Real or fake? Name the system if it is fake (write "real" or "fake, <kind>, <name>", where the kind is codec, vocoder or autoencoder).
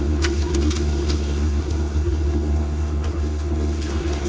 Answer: fake, codec, SNAC